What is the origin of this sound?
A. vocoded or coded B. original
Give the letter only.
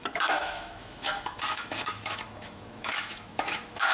A